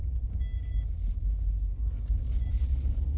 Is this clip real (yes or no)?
yes